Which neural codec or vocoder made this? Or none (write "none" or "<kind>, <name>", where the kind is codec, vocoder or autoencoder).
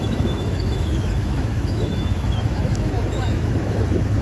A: autoencoder, DAC-VAE